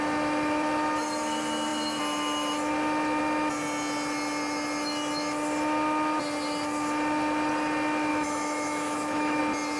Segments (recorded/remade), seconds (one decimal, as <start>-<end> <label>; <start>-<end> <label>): 0.0-8.1 recorded; 8.1-9.4 remade; 9.4-9.8 recorded